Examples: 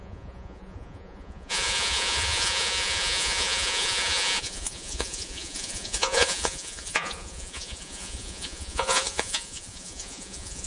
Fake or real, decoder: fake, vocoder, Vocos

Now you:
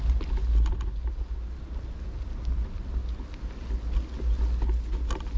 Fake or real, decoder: real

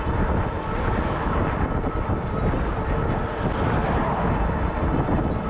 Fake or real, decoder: real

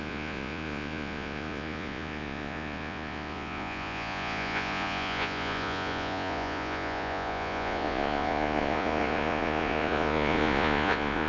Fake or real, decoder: fake, vocoder, Vocos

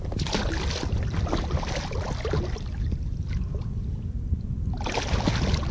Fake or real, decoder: real